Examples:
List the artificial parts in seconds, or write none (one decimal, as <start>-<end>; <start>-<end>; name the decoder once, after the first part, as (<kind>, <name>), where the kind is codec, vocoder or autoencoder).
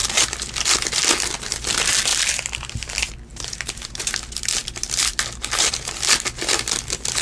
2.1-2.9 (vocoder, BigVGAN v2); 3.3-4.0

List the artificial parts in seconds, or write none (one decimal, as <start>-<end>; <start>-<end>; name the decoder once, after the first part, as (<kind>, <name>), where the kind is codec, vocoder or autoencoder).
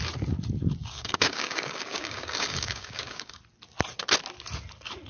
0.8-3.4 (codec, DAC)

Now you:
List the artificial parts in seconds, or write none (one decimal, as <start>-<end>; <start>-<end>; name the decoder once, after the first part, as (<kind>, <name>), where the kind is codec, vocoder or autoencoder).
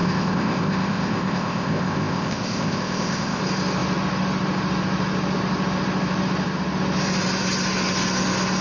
0.0-3.4 (codec, ZipCodec)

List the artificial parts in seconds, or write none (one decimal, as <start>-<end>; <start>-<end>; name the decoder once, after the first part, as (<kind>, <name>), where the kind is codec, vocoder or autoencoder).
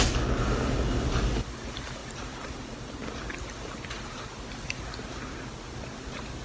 none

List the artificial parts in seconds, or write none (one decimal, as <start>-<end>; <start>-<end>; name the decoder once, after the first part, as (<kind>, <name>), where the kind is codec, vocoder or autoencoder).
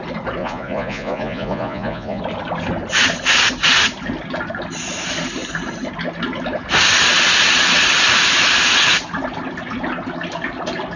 0.4-2.2 (vocoder, Vocos)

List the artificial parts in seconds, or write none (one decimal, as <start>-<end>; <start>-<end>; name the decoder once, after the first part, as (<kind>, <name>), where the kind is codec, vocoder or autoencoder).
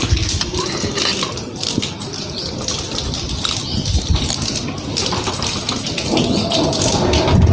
none